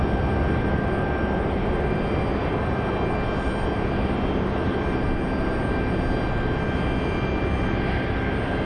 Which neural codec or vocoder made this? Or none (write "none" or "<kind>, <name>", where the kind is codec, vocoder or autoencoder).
none